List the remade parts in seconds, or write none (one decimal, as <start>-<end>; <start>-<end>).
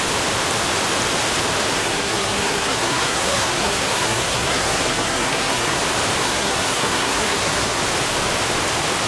1.7-5.8; 6.2-7.8